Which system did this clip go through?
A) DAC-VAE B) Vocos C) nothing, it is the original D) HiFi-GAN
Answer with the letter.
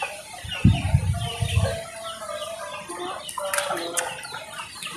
C